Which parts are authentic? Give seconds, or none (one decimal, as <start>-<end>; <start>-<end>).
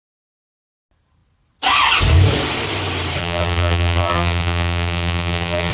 0.0-3.2